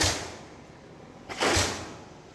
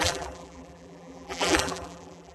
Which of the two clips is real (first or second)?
first